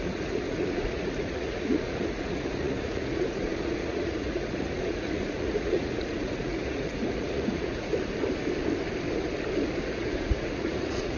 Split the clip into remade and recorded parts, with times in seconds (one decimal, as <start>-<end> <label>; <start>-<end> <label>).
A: 0.0-7.9 remade; 7.9-9.8 recorded; 9.8-11.2 remade

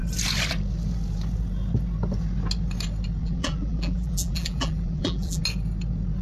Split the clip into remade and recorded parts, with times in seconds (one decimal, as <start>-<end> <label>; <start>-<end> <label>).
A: 0.0-3.2 recorded; 3.2-5.4 remade; 5.4-6.2 recorded

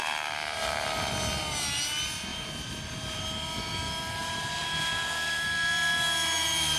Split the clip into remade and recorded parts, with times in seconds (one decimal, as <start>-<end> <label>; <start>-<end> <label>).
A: 0.0-1.1 remade; 1.1-2.3 recorded; 2.3-3.2 remade; 3.2-4.2 recorded; 4.2-6.8 remade

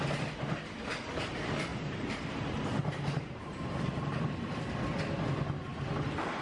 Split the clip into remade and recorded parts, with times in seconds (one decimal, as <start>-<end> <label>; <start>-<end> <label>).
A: 0.0-1.7 recorded; 1.7-4.6 remade; 4.6-5.7 recorded; 5.7-6.4 remade